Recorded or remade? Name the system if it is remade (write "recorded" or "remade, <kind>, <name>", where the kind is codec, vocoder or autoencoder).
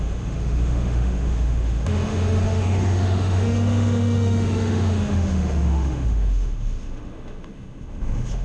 remade, autoencoder, DAC-VAE